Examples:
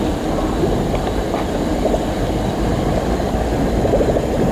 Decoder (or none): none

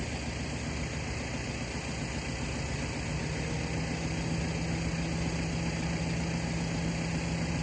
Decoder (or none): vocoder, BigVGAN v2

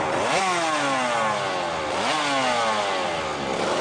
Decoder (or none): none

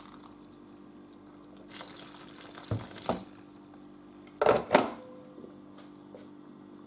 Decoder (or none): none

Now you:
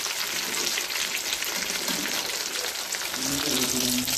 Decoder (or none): vocoder, BigVGAN v2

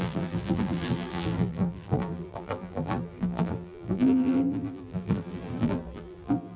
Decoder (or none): vocoder, BigVGAN v2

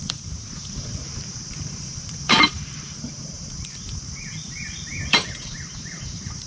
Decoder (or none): vocoder, BigVGAN v2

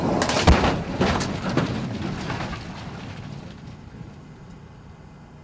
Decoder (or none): none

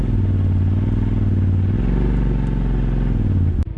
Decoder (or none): none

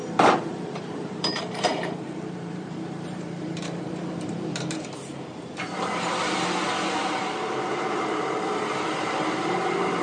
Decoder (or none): vocoder, BigVGAN v2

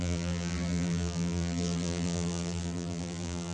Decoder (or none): vocoder, BigVGAN v2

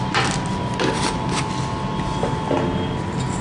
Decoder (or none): none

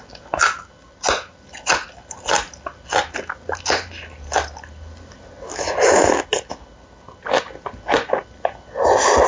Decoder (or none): none